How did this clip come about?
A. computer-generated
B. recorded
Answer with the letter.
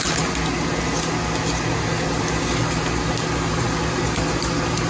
B